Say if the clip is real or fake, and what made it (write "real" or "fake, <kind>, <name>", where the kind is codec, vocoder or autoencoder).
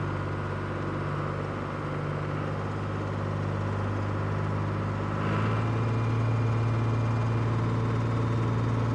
real